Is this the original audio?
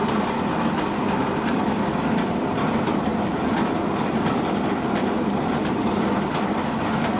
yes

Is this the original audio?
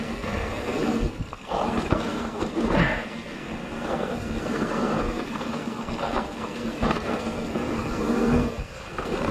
no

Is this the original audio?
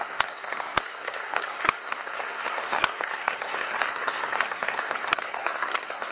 no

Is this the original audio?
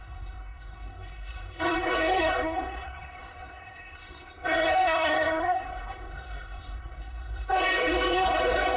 no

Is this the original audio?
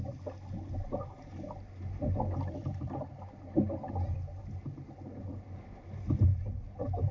yes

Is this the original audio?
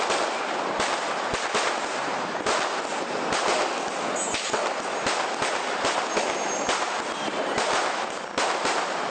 yes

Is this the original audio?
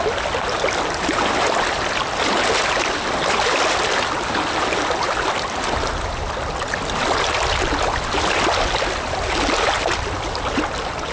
yes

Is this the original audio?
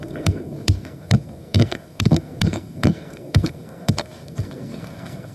no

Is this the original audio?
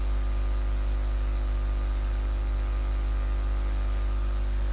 yes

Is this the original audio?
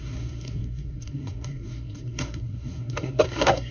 no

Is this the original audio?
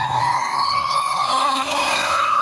no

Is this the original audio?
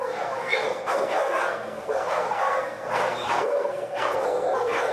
no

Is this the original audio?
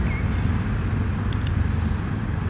yes